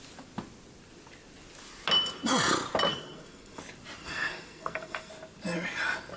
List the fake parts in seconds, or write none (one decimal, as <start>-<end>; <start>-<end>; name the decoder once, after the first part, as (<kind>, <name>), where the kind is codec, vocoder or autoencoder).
2.9-3.6 (codec, SNAC); 4.0-5.1